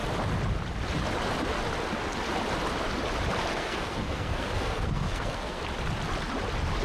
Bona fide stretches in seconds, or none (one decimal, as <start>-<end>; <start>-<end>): 0.0-3.5; 5.6-6.8